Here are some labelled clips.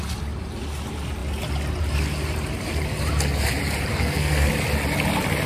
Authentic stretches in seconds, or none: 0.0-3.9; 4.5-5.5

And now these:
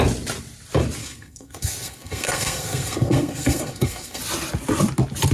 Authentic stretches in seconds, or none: 0.0-1.0; 4.2-5.3